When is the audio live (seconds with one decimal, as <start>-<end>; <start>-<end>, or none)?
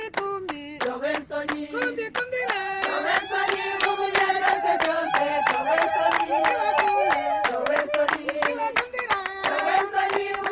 0.0-10.5